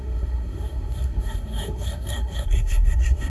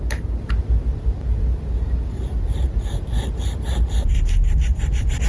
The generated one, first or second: first